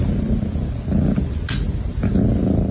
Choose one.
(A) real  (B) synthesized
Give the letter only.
A